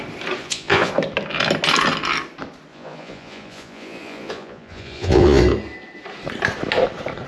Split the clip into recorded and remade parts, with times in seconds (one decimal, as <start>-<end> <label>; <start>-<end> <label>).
0.0-0.4 recorded; 0.4-0.9 remade; 0.9-2.7 recorded; 2.7-5.4 remade; 5.4-7.3 recorded